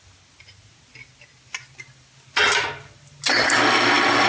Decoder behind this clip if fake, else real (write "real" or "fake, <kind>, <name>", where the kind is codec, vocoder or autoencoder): real